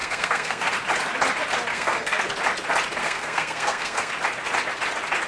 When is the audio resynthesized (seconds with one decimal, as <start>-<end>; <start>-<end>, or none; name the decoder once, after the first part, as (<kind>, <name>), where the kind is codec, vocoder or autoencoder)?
0.0-0.7 (codec, SNAC); 1.7-2.2; 3.0-4.1